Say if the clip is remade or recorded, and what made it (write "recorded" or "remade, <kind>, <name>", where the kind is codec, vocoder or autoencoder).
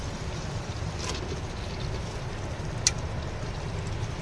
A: recorded